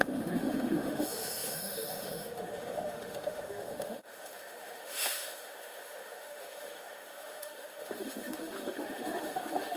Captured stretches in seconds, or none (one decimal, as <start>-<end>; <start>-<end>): none